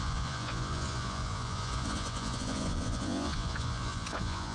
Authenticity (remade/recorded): remade